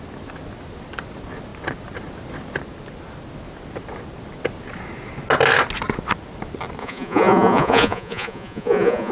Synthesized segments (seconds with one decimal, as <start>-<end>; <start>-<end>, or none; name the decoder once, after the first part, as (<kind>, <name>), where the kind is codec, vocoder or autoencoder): 6.8-9.1 (vocoder, Vocos)